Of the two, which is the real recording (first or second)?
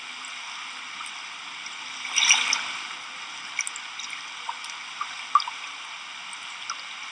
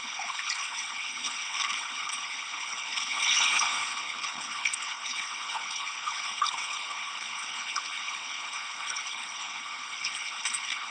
first